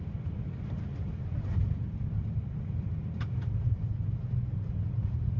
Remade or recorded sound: recorded